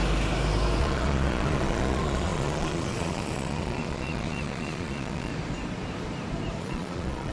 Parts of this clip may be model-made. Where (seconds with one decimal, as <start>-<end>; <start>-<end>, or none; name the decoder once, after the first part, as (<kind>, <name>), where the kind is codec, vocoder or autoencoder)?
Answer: 0.8-5.3 (vocoder, Vocos); 6.6-7.3